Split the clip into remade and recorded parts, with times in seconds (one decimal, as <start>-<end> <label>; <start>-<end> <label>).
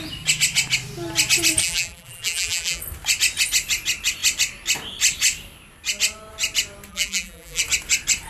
0.0-1.6 recorded; 1.6-2.8 remade; 2.8-6.9 recorded; 6.9-7.6 remade; 7.6-8.3 recorded